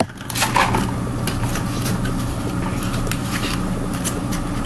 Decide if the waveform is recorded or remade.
recorded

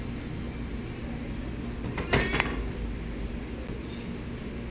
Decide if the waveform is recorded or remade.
recorded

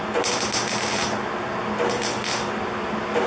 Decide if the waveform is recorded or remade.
recorded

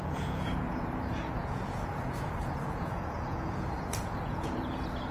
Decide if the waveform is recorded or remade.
remade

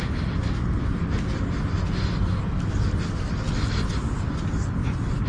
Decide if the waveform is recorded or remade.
recorded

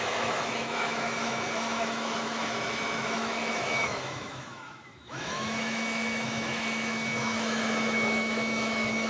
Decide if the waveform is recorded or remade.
remade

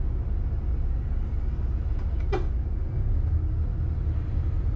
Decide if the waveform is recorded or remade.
recorded